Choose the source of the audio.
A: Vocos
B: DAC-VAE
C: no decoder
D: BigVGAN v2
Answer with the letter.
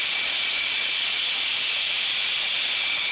A